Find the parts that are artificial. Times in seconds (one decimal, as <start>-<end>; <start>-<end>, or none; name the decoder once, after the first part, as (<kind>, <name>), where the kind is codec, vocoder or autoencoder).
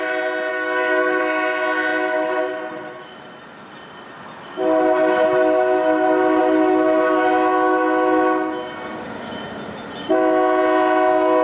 0.5-1.2 (codec, DAC)